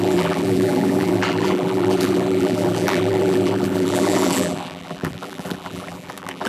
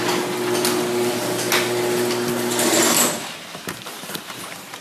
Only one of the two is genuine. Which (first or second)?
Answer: second